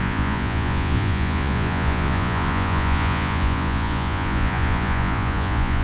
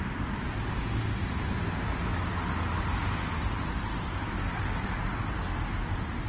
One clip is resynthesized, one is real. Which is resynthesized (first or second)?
first